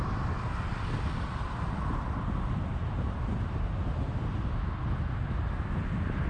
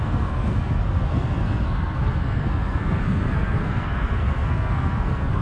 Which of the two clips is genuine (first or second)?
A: first